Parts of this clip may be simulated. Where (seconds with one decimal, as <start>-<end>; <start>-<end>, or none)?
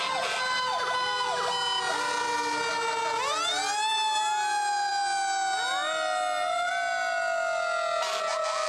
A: none